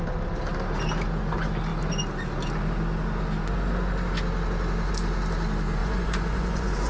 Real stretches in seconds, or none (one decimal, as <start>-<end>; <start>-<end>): 0.0-5.8